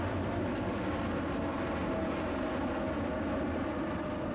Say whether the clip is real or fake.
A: real